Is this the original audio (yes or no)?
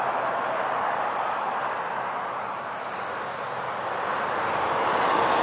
yes